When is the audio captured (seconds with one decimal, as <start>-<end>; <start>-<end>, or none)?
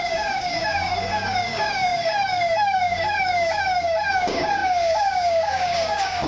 none